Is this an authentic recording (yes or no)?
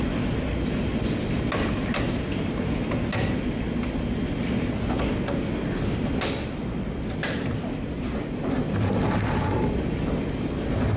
yes